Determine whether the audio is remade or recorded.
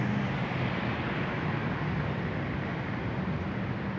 recorded